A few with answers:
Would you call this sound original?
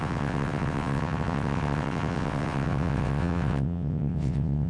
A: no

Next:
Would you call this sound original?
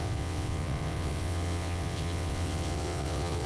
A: no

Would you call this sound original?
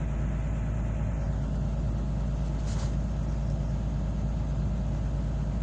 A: yes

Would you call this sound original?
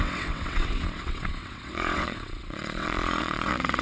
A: no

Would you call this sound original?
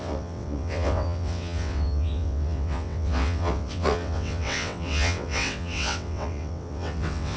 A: no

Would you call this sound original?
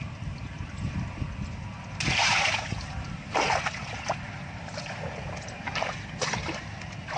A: yes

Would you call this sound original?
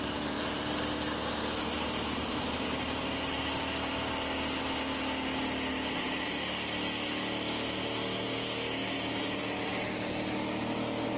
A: yes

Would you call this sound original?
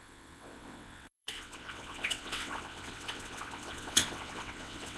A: no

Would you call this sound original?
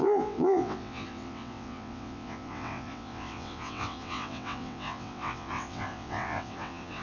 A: no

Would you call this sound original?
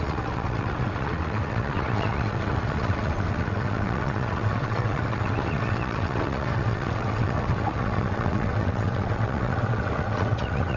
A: no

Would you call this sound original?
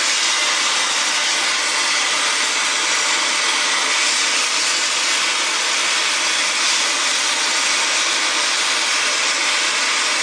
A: yes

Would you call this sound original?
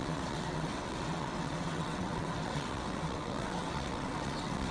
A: no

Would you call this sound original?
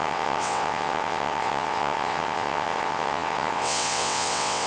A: no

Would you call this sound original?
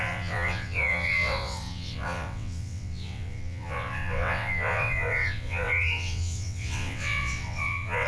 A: no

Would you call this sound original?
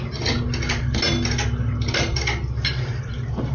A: yes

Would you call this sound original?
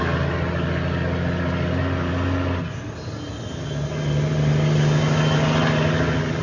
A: yes